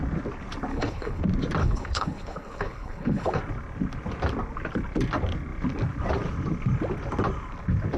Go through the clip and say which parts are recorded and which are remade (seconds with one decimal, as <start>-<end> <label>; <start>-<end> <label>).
0.0-0.7 recorded; 0.7-1.2 remade; 1.2-1.6 recorded; 1.6-3.4 remade; 3.4-8.0 recorded